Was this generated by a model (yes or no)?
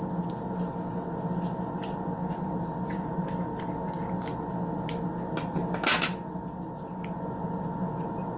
no